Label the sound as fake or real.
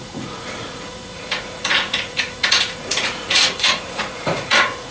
fake